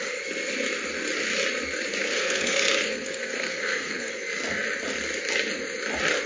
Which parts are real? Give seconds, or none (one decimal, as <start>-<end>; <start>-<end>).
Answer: 0.0-2.0; 4.1-6.3